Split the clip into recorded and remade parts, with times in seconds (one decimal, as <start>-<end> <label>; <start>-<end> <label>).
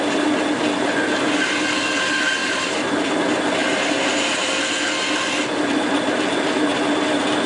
0.0-2.4 recorded; 2.4-3.1 remade; 3.1-3.6 recorded; 3.6-4.6 remade; 4.6-7.5 recorded